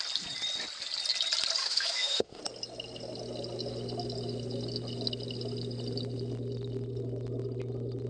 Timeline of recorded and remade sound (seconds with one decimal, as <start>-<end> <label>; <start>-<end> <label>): 0.0-1.6 recorded; 1.6-2.4 remade; 2.4-8.1 recorded